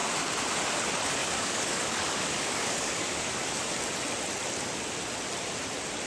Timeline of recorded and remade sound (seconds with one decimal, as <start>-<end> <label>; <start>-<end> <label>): 0.0-1.2 recorded; 1.2-3.7 remade; 3.7-6.1 recorded